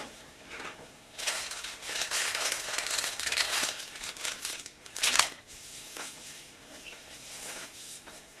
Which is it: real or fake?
fake